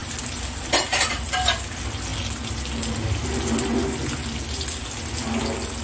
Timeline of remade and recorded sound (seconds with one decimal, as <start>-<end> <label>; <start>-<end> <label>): 0.0-5.8 recorded